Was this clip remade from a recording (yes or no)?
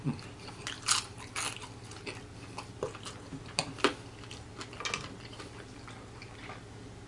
no